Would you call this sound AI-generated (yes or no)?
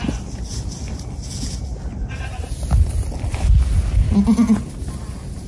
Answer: no